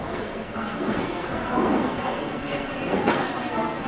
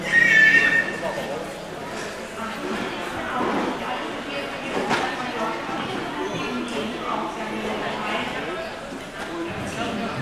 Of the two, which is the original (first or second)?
second